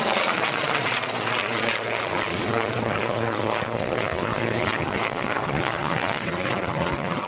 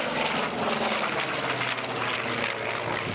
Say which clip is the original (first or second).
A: second